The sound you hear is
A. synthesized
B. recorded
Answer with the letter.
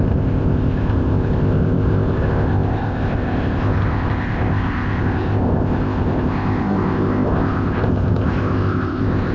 A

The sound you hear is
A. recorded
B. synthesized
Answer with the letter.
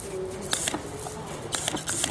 A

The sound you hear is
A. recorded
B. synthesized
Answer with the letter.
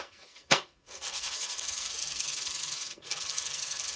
B